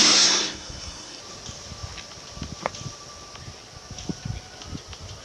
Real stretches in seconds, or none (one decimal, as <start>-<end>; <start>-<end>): 1.2-5.2